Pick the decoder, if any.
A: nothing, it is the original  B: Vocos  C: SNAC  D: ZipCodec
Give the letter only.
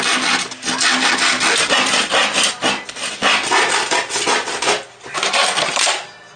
A